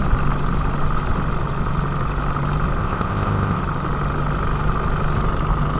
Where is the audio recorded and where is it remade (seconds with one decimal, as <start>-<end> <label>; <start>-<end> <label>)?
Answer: 0.0-2.8 recorded; 2.8-3.6 remade; 3.6-5.8 recorded